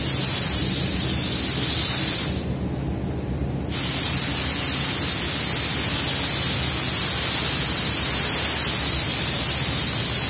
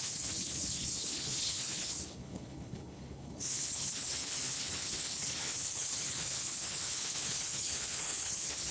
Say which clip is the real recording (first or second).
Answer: first